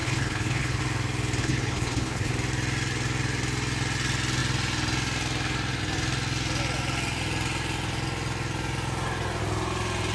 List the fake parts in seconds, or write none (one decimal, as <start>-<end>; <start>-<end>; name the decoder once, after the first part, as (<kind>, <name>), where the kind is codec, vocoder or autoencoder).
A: 0.0-0.8 (codec, HILCodec); 1.4-2.3